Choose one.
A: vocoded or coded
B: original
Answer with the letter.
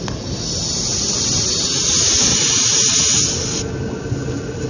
B